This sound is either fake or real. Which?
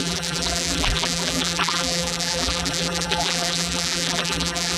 fake